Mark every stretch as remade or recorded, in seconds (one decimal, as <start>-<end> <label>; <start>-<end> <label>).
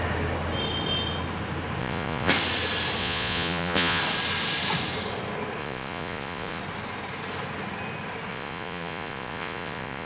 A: 0.0-1.8 recorded; 1.8-2.3 remade; 2.3-3.0 recorded; 3.0-4.0 remade; 4.0-5.6 recorded; 5.6-6.6 remade; 6.6-8.3 recorded; 8.3-10.1 remade